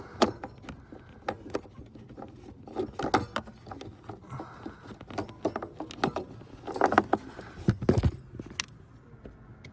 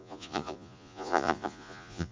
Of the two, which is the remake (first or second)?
second